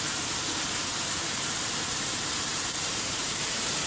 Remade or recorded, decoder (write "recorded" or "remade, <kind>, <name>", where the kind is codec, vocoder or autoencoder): remade, vocoder, BigVGAN v2